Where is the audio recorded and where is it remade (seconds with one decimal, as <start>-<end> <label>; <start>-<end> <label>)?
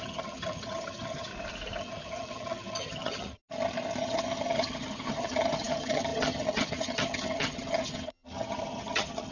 0.0-1.3 remade; 1.3-1.8 recorded; 1.8-3.4 remade; 3.4-4.0 recorded; 4.0-9.3 remade